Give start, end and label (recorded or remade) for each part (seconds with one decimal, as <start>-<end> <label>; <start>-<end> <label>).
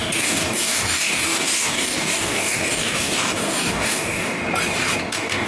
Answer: 0.0-4.4 remade; 4.4-5.0 recorded; 5.0-5.5 remade